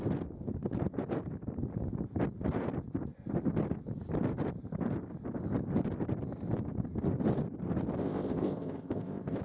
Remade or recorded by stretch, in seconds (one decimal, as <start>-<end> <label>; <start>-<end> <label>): 0.0-8.0 recorded; 8.0-9.4 remade